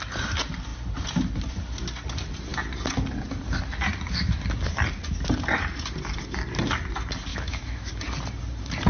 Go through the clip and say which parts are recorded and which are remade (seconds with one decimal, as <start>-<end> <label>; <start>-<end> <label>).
0.0-7.3 recorded; 7.3-7.9 remade; 7.9-8.9 recorded